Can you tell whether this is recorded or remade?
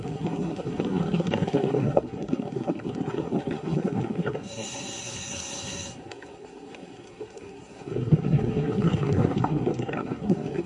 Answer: remade